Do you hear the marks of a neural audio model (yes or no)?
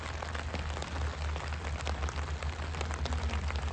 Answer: no